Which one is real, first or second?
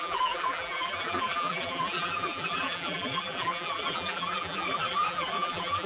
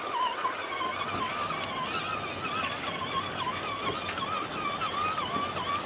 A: second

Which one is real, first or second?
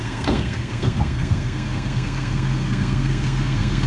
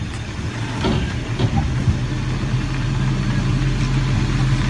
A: second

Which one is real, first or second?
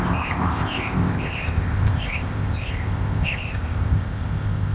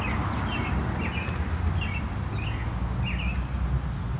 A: second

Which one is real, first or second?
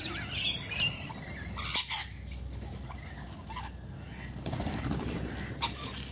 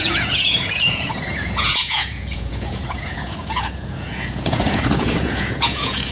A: first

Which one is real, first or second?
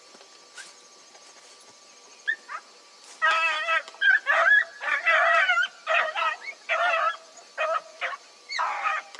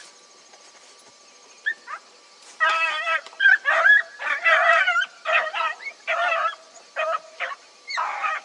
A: first